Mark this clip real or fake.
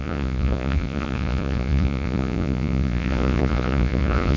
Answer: fake